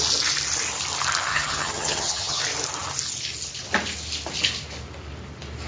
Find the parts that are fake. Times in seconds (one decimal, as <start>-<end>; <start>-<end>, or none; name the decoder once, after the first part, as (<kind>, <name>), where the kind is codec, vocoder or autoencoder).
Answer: 1.3-2.4 (vocoder, HiFi-GAN)